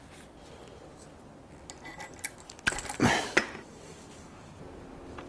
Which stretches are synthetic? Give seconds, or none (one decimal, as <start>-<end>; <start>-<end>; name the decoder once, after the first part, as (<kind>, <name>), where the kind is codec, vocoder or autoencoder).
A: none